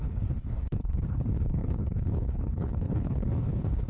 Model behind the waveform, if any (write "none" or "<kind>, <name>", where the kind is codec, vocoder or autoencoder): codec, HILCodec